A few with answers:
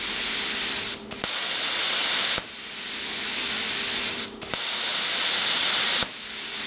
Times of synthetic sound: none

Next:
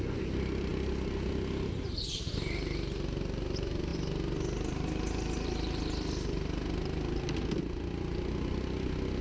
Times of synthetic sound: none

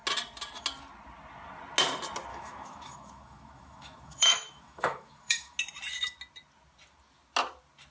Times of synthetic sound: 2.3-5.6 (autoencoder, DAC-VAE)

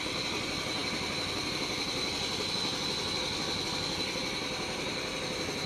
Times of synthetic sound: none